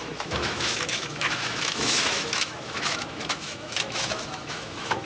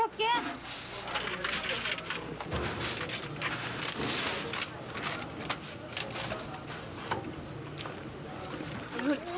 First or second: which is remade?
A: first